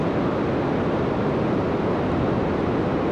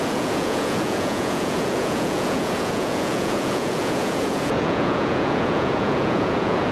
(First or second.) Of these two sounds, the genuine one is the first